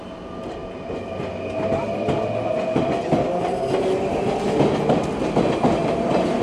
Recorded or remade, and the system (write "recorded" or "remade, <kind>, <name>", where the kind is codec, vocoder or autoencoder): recorded